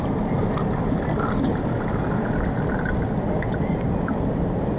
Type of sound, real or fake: real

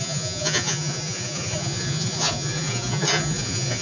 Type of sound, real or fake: fake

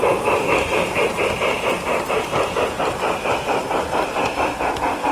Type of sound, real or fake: real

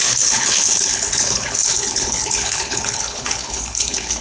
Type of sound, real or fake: fake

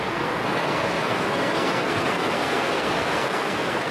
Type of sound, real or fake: fake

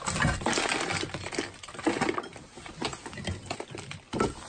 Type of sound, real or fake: real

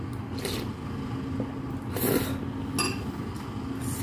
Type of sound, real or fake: real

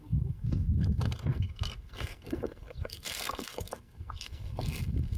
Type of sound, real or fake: fake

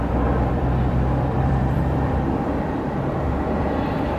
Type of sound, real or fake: fake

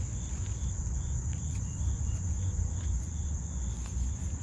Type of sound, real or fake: fake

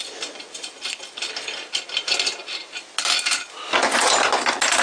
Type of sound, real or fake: real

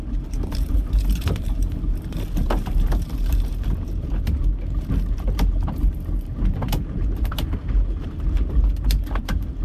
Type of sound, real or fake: fake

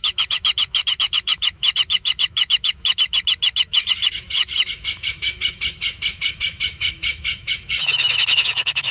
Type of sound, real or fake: fake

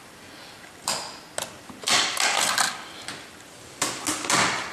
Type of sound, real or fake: real